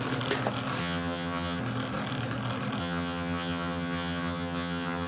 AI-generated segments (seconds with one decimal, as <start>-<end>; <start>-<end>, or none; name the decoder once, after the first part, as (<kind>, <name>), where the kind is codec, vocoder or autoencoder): 0.8-1.6 (vocoder, HiFi-GAN); 2.8-5.1